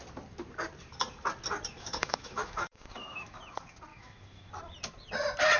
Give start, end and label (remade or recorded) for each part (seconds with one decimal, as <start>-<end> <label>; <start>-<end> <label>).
0.0-1.7 recorded; 1.7-3.4 remade; 3.4-3.9 recorded; 3.9-4.5 remade; 4.5-5.6 recorded